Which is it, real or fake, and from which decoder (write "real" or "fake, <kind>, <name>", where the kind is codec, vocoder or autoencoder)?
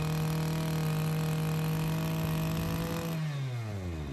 real